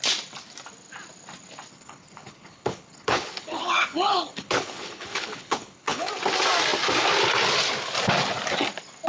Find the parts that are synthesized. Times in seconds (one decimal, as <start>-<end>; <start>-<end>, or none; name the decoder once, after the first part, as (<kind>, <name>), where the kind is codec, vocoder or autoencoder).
1.7-6.1 (codec, HILCodec)